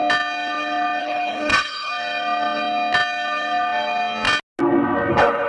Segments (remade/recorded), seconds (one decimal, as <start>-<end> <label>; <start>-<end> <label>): 0.0-1.0 recorded; 1.0-1.9 remade; 1.9-5.1 recorded; 5.1-5.5 remade